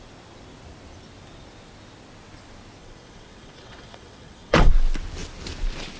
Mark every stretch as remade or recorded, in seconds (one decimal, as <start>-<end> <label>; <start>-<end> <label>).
0.0-2.8 recorded; 2.8-4.7 remade; 4.7-6.0 recorded